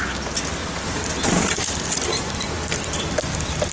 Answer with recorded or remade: recorded